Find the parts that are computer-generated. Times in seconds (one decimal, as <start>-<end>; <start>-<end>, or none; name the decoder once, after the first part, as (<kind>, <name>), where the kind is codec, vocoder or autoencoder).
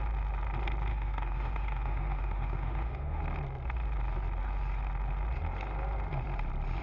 0.9-3.2 (autoencoder, DAC-VAE)